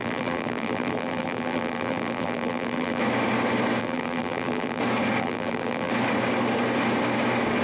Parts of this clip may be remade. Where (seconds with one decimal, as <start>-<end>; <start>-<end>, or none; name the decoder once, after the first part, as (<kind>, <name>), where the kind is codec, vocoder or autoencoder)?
0.0-3.0 (vocoder, BigVGAN v2); 3.8-4.8; 5.2-5.9